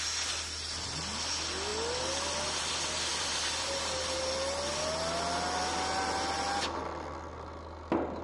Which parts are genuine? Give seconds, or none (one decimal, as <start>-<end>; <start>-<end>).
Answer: 0.0-1.7; 2.7-3.1; 4.8-8.2